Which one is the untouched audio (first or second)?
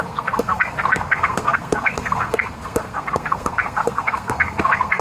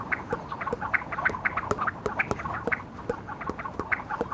second